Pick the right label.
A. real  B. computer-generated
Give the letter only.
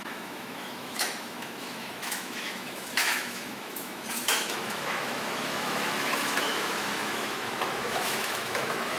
B